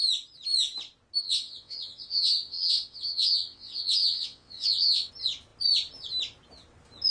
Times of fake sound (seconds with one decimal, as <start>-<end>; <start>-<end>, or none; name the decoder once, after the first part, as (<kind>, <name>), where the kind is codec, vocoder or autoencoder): 1.2-5.1 (vocoder, WaveNeXt)